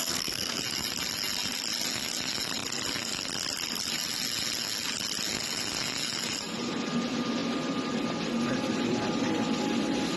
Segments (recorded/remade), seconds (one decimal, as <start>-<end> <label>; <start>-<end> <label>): 0.0-0.6 remade; 0.6-10.2 recorded